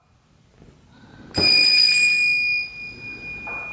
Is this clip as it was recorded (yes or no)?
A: yes